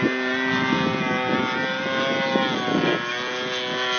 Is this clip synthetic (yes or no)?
no